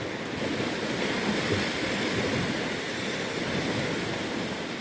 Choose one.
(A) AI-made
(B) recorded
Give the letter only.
B